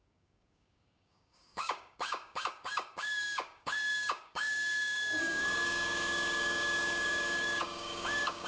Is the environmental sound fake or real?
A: fake